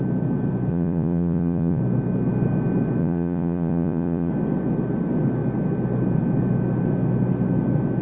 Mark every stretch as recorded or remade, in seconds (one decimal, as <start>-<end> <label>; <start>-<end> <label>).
0.0-0.7 recorded; 0.7-1.8 remade; 1.8-3.0 recorded; 3.0-4.3 remade; 4.3-8.0 recorded